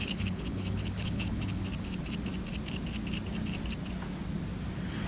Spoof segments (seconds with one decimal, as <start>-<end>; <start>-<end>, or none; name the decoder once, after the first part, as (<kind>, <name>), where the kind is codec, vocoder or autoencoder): 0.0-1.6 (codec, HILCodec)